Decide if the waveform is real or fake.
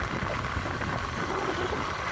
real